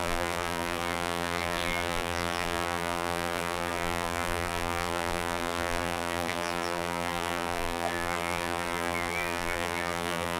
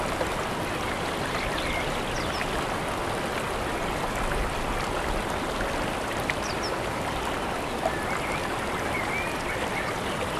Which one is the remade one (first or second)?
first